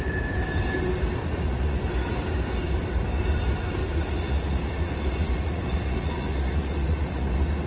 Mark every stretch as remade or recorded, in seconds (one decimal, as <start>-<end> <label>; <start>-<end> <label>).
0.0-1.2 recorded; 1.2-1.8 remade; 1.8-3.8 recorded; 3.8-7.7 remade